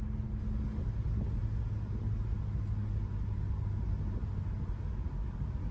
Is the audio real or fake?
real